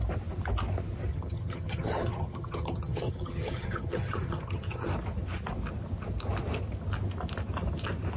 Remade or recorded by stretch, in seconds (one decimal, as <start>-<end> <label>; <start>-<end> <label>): 0.0-1.1 recorded; 1.1-4.9 remade; 4.9-8.2 recorded